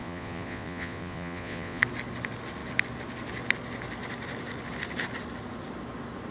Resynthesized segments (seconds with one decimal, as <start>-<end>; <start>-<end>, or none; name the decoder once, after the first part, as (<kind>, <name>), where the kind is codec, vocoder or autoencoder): 0.0-1.8 (vocoder, Vocos)